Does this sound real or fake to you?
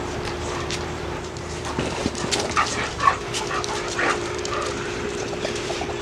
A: fake